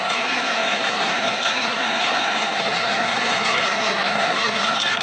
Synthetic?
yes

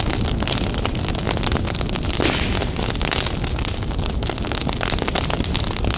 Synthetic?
no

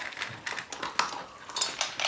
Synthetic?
no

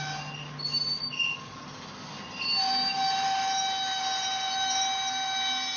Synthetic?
no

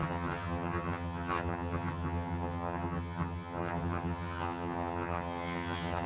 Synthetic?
yes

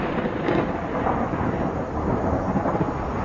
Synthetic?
no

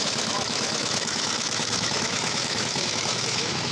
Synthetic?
yes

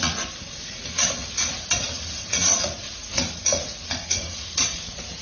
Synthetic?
yes